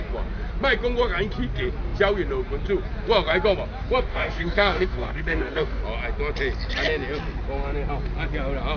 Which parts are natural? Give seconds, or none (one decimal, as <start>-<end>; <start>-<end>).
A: 0.0-4.1; 5.8-8.8